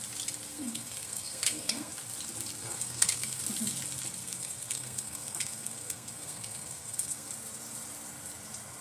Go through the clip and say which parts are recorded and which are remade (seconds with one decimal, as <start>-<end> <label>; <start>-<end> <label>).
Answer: 0.0-0.5 recorded; 0.5-1.9 remade; 1.9-2.6 recorded; 2.6-3.4 remade; 3.4-4.2 recorded; 4.2-7.3 remade; 7.3-8.8 recorded